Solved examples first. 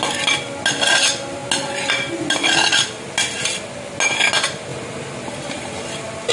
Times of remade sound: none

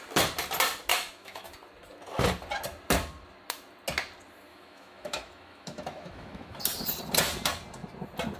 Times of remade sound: 0.9-1.5; 4.5-6.6

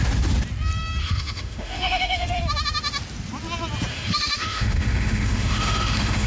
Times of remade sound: 1.0-2.4; 3.9-6.3

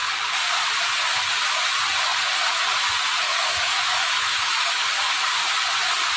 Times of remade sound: 3.3-4.9